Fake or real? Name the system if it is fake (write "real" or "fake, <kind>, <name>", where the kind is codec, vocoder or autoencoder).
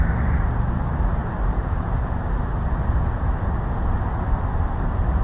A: fake, vocoder, BigVGAN v2